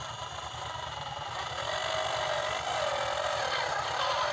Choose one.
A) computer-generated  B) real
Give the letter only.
B